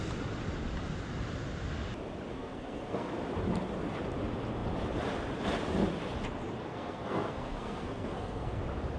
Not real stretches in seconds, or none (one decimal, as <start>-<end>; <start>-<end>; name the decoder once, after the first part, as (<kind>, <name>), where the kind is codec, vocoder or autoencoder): 2.3-3.1 (codec, SNAC); 6.7-8.6